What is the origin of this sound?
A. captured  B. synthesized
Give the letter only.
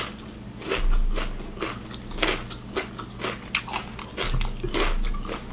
A